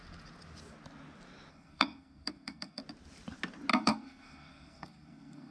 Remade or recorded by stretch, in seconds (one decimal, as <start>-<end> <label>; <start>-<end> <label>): 0.0-1.5 recorded; 1.5-2.8 remade; 2.8-3.7 recorded; 3.7-5.5 remade